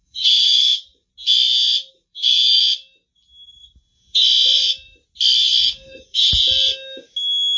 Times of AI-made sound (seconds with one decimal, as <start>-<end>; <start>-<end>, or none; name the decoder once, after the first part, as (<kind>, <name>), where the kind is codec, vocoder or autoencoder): 0.0-1.1 (codec, DAC); 1.9-2.6; 5.6-6.4